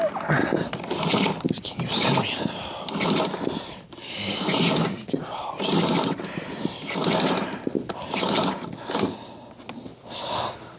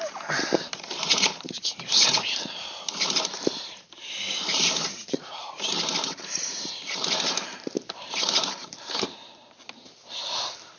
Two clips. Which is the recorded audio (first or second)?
first